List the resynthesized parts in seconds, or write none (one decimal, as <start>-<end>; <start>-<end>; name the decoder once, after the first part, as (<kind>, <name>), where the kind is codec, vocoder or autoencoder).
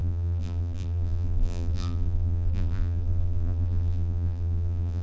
0.0-5.0 (vocoder, BigVGAN v2)